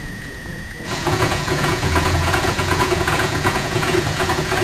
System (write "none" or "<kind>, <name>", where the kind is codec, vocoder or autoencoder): vocoder, Vocos